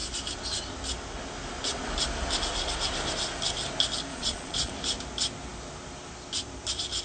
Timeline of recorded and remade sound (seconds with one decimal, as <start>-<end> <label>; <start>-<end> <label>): 0.0-4.1 recorded; 4.1-4.7 remade; 4.7-7.0 recorded